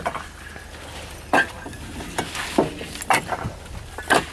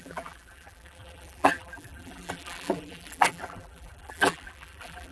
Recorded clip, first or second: first